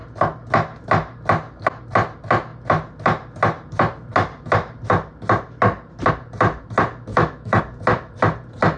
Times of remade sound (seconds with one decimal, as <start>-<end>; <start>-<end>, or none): 7.1-7.6